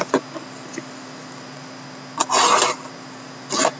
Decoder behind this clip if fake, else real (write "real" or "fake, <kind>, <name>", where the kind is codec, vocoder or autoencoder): real